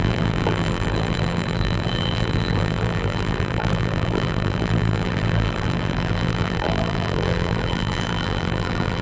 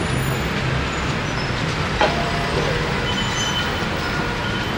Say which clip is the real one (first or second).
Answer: second